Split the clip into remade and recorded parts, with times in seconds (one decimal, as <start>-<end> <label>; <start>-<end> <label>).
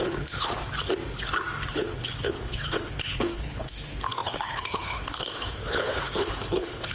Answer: 0.0-0.6 remade; 0.6-1.7 recorded; 1.7-6.9 remade